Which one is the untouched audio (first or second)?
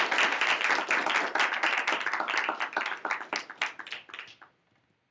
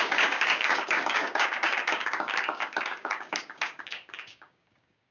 first